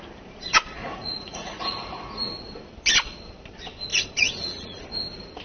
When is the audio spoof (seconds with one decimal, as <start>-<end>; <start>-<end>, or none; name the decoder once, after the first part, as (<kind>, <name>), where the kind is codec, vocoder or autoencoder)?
0.8-2.3 (vocoder, Vocos); 3.9-4.8